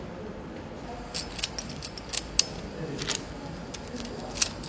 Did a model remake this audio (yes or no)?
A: no